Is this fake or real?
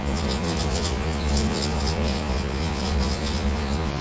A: fake